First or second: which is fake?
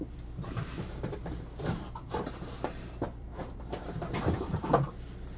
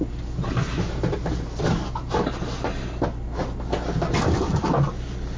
first